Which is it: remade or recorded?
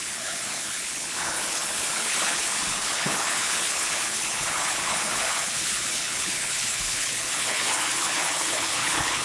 remade